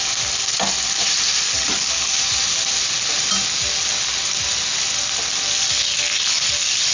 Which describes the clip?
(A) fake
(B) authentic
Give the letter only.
B